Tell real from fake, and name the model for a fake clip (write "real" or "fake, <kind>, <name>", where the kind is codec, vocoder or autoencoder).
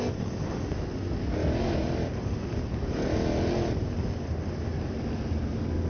real